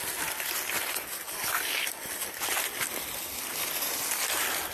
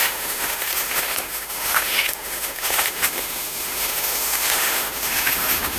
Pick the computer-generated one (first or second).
second